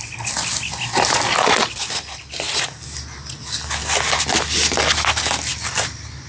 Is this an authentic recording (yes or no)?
yes